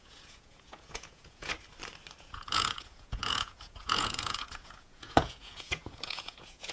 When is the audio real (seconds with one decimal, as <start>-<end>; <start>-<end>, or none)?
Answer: 1.5-2.2